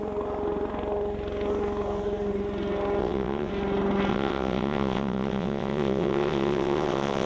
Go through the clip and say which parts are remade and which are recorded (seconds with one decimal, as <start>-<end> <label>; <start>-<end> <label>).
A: 0.0-3.0 recorded; 3.0-3.5 remade; 3.5-4.1 recorded; 4.1-7.3 remade